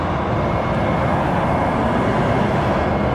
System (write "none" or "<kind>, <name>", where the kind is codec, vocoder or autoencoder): none